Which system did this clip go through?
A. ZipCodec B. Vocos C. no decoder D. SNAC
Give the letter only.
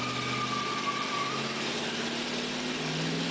C